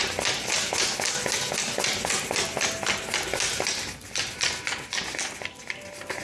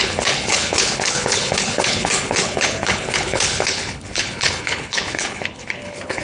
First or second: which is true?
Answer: first